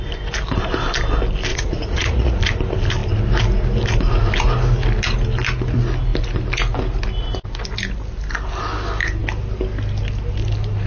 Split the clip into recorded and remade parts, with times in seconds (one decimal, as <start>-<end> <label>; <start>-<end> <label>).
0.0-1.5 recorded; 1.5-2.4 remade; 2.4-10.9 recorded